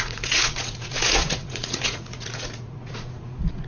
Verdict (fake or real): fake